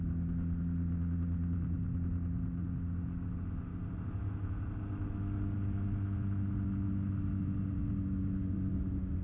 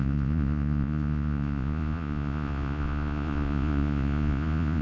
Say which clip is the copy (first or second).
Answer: second